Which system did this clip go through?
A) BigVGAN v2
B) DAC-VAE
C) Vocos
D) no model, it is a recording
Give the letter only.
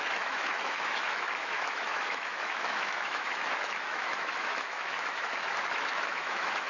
B